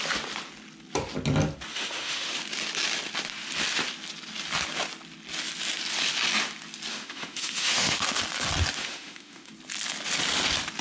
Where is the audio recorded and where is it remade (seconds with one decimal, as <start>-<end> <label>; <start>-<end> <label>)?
0.0-1.7 recorded; 1.7-2.4 remade; 2.4-6.9 recorded; 6.9-8.2 remade; 8.2-8.8 recorded; 8.8-9.5 remade; 9.5-10.8 recorded